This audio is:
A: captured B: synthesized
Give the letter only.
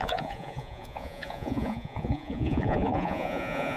B